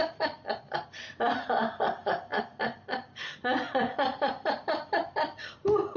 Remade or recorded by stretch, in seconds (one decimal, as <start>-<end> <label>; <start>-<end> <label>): 0.0-2.3 remade; 2.3-4.3 recorded; 4.3-6.0 remade